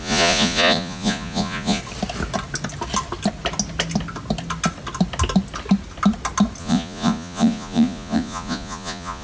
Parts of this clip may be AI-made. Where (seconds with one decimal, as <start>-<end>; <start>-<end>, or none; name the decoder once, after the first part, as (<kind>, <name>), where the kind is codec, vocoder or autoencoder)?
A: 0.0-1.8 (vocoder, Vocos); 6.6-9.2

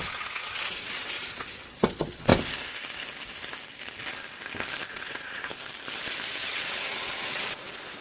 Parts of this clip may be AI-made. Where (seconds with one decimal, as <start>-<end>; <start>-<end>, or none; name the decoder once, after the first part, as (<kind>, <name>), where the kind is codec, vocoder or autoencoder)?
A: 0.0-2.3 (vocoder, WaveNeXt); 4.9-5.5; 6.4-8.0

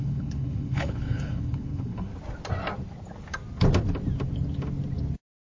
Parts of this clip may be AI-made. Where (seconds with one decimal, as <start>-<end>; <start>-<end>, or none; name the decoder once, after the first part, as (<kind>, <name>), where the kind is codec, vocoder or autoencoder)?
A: 0.0-2.1 (codec, HILCodec)